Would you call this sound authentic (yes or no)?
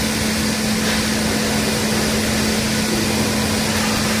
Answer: yes